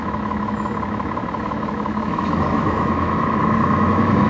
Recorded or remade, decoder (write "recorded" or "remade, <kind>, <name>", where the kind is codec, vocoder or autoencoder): remade, autoencoder, DAC-VAE